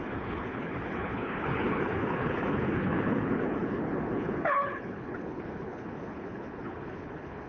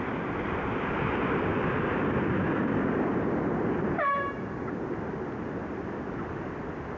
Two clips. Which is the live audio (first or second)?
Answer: second